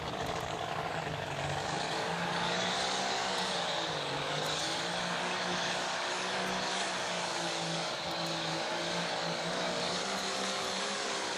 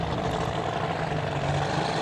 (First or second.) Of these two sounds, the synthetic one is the first